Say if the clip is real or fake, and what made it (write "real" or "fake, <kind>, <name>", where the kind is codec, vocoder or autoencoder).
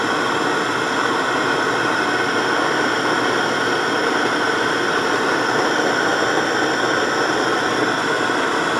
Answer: real